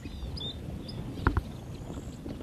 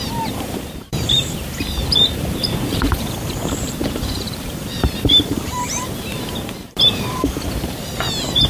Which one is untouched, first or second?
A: first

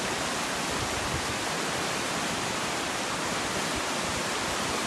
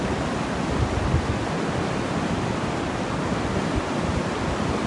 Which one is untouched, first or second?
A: second